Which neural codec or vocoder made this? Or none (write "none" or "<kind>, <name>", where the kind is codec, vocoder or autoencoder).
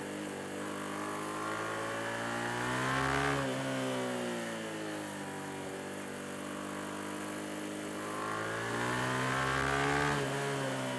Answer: none